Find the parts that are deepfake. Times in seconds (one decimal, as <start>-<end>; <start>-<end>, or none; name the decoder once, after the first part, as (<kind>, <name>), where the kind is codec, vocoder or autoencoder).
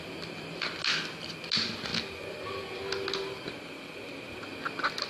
none